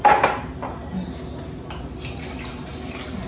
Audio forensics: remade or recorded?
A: recorded